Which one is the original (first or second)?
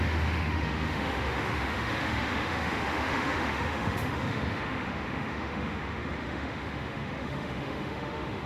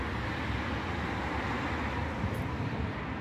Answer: second